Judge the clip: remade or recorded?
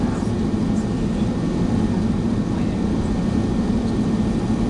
recorded